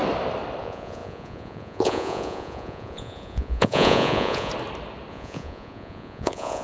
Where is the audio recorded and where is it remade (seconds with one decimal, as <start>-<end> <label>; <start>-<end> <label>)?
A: 0.0-0.6 recorded; 0.6-4.5 remade; 4.5-5.1 recorded; 5.1-6.6 remade